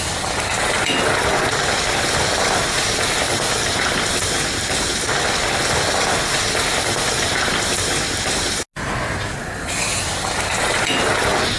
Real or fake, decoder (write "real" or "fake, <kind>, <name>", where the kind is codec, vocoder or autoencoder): real